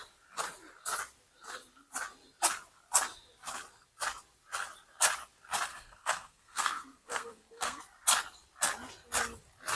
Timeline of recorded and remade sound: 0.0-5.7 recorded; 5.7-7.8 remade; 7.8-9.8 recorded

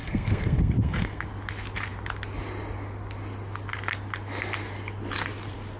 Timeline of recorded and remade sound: 0.0-1.2 remade; 1.2-5.8 recorded

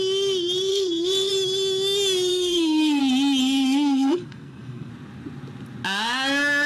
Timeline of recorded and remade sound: 0.0-0.7 recorded; 0.7-1.3 remade; 1.3-2.3 recorded; 2.3-3.0 remade; 3.0-3.4 recorded; 3.4-4.9 remade; 4.9-6.7 recorded

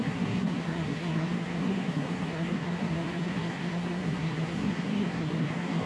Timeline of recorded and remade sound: 0.0-5.9 remade

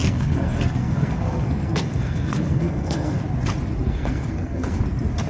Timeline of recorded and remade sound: 0.0-3.2 remade; 3.2-3.8 recorded; 3.8-4.8 remade; 4.8-5.3 recorded

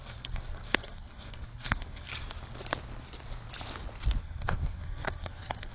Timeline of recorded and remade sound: 0.0-2.1 remade; 2.1-4.2 recorded; 4.2-5.7 remade